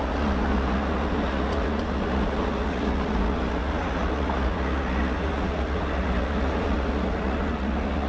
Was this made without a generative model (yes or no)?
no